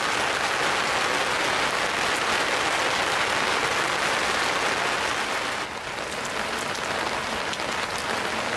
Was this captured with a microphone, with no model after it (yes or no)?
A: yes